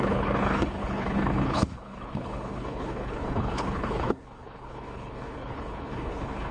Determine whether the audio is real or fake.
fake